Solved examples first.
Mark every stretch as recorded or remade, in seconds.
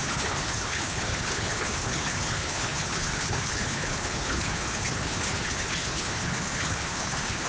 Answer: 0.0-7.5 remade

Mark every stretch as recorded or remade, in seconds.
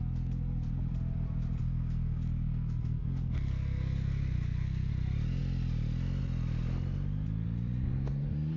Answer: 0.0-1.6 recorded; 1.6-4.9 remade; 4.9-8.6 recorded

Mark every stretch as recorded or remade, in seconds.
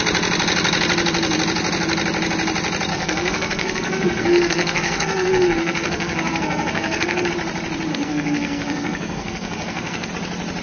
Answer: 0.0-2.9 recorded; 2.9-7.3 remade; 7.3-7.9 recorded; 7.9-10.1 remade; 10.1-10.6 recorded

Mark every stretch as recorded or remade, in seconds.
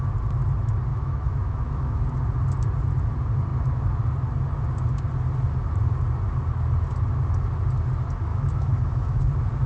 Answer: 0.0-0.9 recorded; 0.9-2.0 remade; 2.0-8.3 recorded; 8.3-9.2 remade; 9.2-9.7 recorded